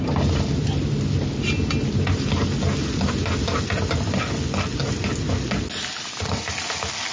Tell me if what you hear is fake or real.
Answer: real